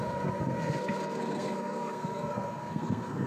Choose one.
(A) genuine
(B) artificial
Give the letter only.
B